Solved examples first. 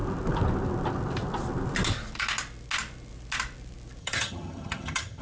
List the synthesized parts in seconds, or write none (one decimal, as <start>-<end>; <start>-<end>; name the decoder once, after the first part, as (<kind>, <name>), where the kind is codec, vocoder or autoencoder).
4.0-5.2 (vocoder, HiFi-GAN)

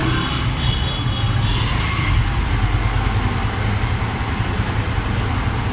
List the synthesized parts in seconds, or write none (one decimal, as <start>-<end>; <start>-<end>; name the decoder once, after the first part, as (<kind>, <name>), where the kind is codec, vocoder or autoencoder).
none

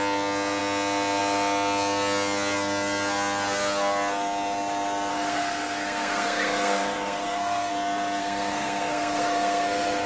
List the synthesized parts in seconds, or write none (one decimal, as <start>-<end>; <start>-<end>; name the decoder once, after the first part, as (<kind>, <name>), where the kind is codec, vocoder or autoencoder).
5.1-7.7 (codec, SNAC); 8.2-10.1